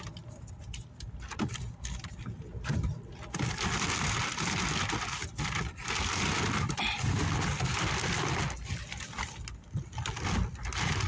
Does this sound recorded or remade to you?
recorded